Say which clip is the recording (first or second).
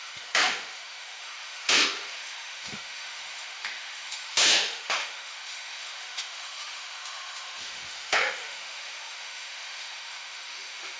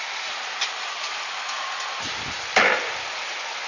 second